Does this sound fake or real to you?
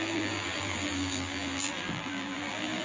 fake